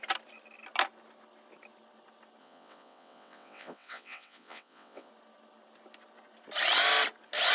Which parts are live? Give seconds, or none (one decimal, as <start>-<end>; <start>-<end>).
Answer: 0.0-2.4; 5.1-7.5